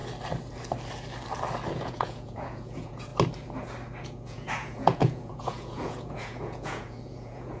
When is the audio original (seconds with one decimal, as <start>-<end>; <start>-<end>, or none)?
0.0-1.7; 3.1-4.0